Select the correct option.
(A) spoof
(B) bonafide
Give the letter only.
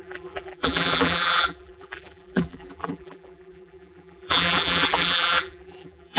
A